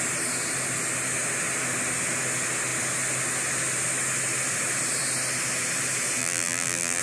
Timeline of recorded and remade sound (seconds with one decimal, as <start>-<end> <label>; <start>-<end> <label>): 0.0-6.2 recorded; 6.2-7.0 remade